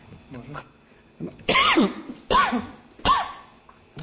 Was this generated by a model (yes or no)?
no